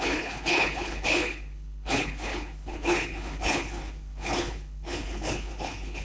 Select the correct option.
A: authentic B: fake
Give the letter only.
B